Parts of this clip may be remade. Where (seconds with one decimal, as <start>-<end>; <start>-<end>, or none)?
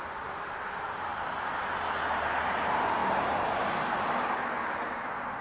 3.0-4.3